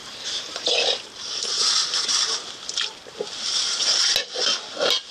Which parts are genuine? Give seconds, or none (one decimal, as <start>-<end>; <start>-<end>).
0.7-5.1